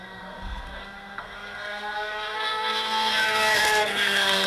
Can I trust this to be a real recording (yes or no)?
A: no